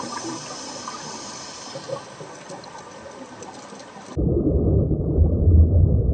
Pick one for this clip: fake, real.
real